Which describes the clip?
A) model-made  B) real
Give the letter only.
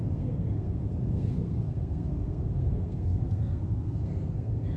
A